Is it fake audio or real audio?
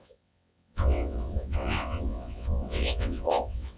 fake